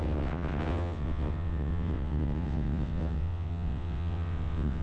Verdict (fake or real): fake